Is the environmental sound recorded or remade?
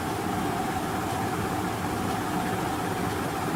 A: recorded